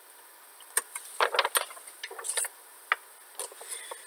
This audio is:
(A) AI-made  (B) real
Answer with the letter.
B